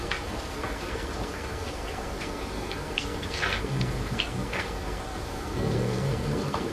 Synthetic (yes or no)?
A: yes